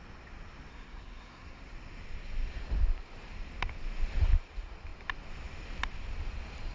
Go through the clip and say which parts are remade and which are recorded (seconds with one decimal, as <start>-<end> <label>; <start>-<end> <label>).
0.0-0.7 recorded; 0.7-1.6 remade; 1.6-6.7 recorded